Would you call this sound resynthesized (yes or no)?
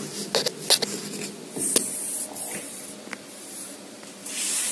no